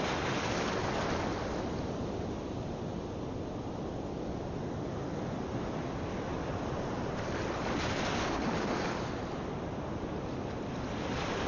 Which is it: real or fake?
real